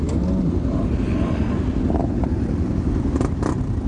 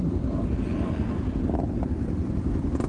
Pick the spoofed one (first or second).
second